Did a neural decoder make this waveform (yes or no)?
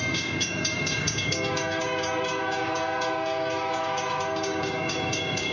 yes